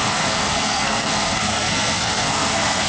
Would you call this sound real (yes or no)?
no